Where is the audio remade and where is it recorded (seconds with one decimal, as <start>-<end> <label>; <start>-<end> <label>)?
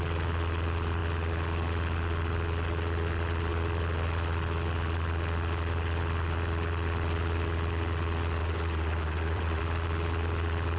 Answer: 0.0-8.4 recorded; 8.4-9.6 remade; 9.6-10.8 recorded